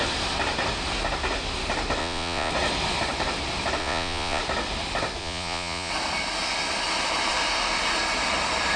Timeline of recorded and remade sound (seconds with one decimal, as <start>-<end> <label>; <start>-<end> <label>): 0.0-2.0 recorded; 2.0-2.5 remade; 2.5-3.8 recorded; 3.8-4.4 remade; 4.4-5.2 recorded; 5.2-5.9 remade; 5.9-8.8 recorded